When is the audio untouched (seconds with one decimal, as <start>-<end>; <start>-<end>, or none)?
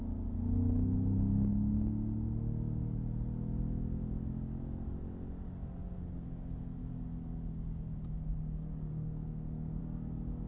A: 0.0-8.9; 9.8-10.5